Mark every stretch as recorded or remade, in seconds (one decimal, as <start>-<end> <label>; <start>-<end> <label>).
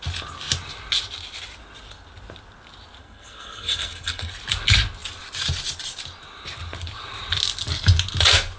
0.0-3.0 recorded; 3.0-4.3 remade; 4.3-8.6 recorded